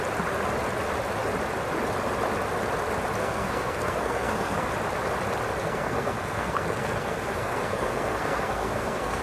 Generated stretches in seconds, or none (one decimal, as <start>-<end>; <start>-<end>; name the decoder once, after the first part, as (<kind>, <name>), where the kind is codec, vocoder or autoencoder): 3.2-4.7 (codec, SNAC); 5.6-9.2